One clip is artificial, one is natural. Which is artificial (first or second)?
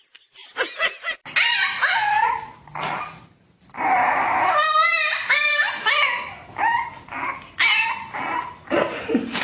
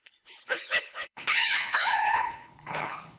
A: second